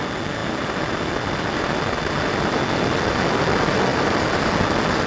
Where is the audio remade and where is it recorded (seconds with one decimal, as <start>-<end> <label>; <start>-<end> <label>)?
0.0-3.9 recorded; 3.9-4.5 remade; 4.5-5.1 recorded